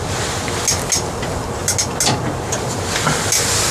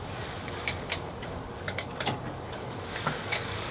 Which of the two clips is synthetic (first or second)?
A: second